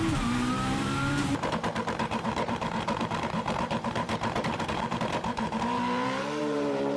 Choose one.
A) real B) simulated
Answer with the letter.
B